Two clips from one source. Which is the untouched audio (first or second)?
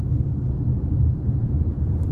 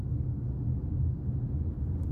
second